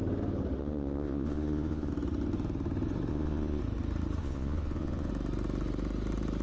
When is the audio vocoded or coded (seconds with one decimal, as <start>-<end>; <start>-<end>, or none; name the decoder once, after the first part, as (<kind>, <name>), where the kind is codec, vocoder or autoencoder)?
0.6-1.9 (vocoder, Vocos); 3.1-3.6; 4.2-5.1